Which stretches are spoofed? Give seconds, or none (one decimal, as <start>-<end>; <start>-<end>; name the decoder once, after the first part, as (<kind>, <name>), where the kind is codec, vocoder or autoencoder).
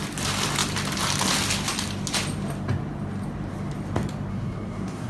4.3-5.1 (codec, SNAC)